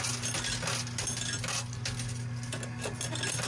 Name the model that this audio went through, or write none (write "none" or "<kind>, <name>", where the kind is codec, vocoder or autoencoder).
none